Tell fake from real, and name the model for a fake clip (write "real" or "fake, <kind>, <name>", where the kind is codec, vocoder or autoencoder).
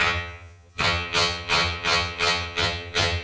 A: fake, vocoder, HiFi-GAN